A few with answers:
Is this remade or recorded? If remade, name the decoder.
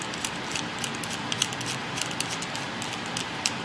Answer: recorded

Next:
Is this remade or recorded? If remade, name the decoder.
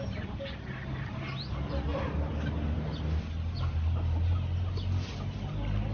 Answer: recorded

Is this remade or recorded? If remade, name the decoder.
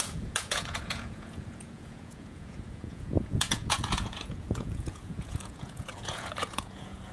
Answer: remade, vocoder, Vocos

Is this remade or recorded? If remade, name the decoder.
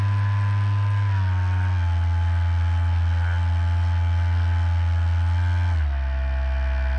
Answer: recorded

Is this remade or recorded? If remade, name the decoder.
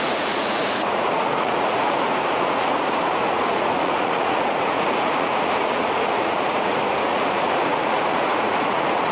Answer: remade, vocoder, Vocos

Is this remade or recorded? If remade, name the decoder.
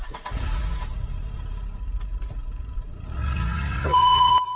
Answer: remade, vocoder, Vocos